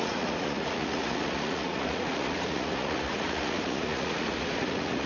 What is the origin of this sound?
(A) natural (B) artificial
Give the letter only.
B